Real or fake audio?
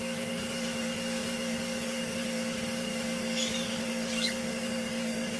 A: fake